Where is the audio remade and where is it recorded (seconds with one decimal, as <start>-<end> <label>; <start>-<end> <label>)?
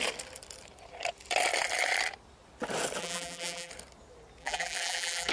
0.0-3.0 recorded; 3.0-3.7 remade; 3.7-4.4 recorded; 4.4-5.3 remade